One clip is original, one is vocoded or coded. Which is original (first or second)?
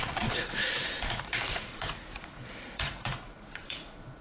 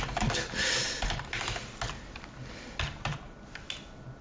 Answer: second